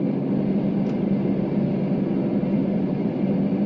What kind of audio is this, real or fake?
real